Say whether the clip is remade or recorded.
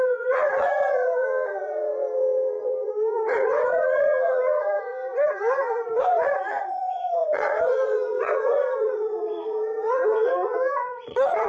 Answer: remade